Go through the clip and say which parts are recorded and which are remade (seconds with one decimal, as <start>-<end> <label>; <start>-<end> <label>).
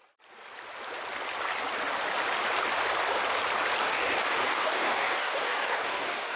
0.0-3.8 recorded; 3.8-6.4 remade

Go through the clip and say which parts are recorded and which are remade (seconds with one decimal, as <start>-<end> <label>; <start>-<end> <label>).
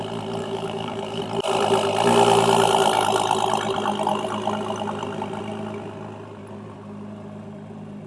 0.0-0.4 recorded; 0.4-1.2 remade; 1.2-8.1 recorded